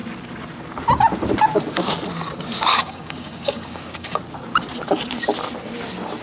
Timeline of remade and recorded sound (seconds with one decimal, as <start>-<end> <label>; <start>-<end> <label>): 0.0-2.7 recorded; 2.7-4.2 remade; 4.2-6.2 recorded